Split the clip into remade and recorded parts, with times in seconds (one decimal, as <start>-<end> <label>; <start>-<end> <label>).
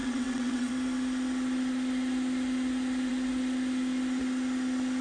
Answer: 0.0-0.7 remade; 0.7-5.0 recorded